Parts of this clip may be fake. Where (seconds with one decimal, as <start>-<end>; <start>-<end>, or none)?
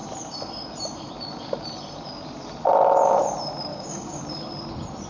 3.7-4.2